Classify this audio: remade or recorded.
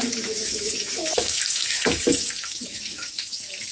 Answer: remade